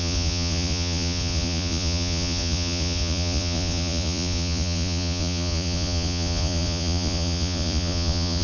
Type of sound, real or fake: fake